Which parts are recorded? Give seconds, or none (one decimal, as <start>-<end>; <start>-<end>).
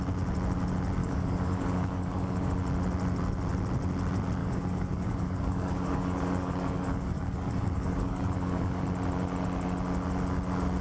0.0-1.0; 2.5-4.4; 8.8-10.8